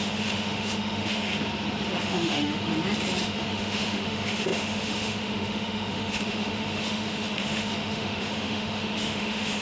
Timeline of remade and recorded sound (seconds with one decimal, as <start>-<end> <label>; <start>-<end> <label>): 0.0-1.3 remade; 1.3-2.0 recorded; 2.0-2.7 remade; 2.7-3.2 recorded; 3.2-9.6 remade